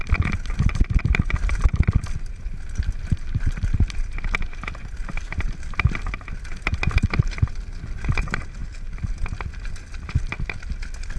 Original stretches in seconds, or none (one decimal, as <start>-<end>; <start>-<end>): 0.0-11.2

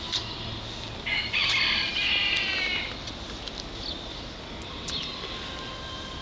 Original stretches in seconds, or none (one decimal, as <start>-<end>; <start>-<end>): 0.0-6.2

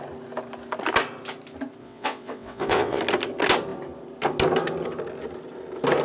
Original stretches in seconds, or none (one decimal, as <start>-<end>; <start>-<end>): 0.0-1.8; 3.0-6.0

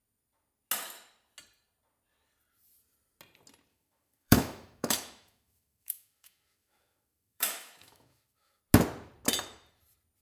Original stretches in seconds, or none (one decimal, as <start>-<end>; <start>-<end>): 0.0-3.7; 8.6-10.2

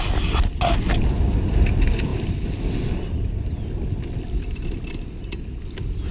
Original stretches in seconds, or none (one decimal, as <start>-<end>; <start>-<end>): 0.0-6.1

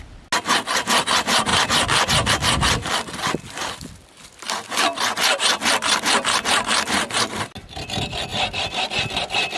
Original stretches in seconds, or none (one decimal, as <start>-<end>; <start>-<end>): 0.0-1.5; 2.3-8.3; 8.9-9.6

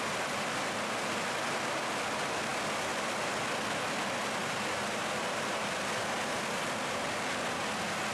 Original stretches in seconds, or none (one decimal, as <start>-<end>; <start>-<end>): 0.0-8.1

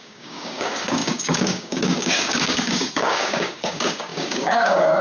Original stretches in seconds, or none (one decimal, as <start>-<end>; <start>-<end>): none